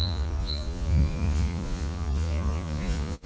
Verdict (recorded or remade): remade